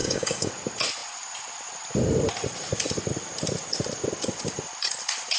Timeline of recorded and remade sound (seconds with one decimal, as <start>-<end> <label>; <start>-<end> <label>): 0.0-0.5 remade; 0.5-5.4 recorded